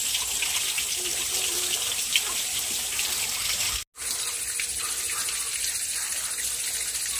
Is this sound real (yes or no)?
yes